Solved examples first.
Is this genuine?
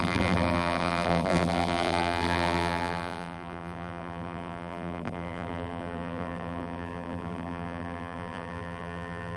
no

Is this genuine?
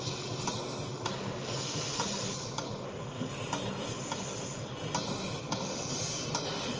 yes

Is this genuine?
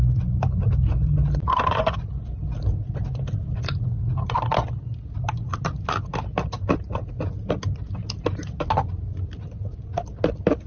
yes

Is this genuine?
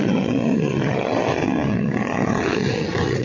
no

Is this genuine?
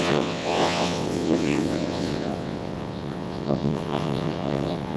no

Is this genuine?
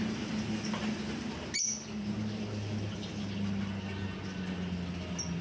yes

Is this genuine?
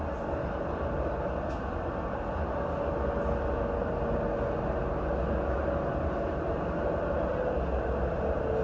yes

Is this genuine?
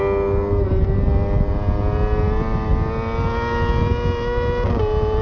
yes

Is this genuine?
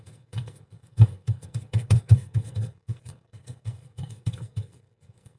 no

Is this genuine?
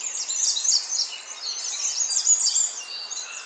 yes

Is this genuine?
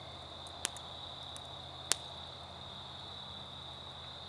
yes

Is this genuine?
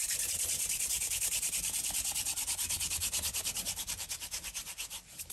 no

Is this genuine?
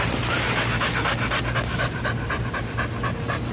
yes